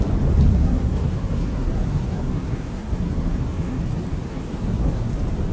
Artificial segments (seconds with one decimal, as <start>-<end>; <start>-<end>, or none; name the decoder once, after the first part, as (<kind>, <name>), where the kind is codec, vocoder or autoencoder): 0.5-3.8 (codec, SNAC); 4.3-5.1